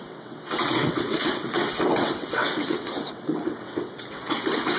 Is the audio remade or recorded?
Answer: remade